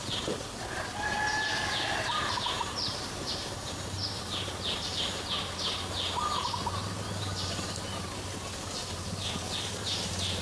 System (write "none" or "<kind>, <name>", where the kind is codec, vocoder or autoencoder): vocoder, BigVGAN v2